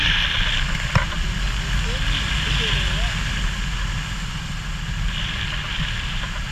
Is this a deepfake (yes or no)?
no